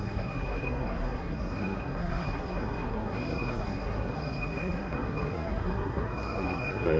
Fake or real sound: fake